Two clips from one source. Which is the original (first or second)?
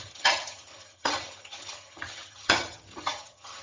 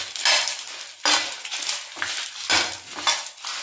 second